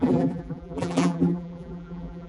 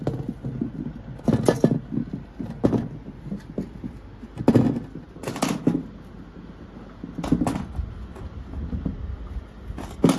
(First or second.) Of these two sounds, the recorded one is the second